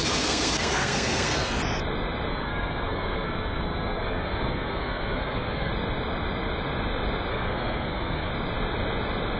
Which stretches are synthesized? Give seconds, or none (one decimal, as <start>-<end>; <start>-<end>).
0.0-1.6; 2.3-5.7; 7.3-8.3